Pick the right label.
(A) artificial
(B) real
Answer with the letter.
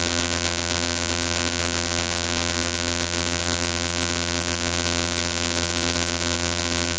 A